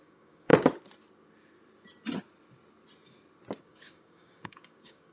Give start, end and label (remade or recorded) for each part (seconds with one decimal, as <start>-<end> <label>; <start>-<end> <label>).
0.0-0.5 remade; 0.5-3.6 recorded; 3.6-5.1 remade